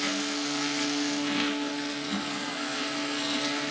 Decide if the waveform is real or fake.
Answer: fake